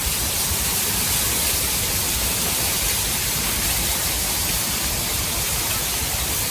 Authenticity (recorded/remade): remade